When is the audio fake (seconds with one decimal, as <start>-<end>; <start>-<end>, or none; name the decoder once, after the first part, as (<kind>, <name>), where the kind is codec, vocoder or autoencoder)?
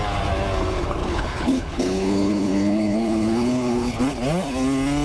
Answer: 1.0-4.0 (codec, HILCodec)